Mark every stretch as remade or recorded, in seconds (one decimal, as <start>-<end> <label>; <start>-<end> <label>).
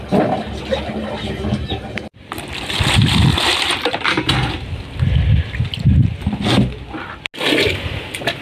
0.0-8.4 recorded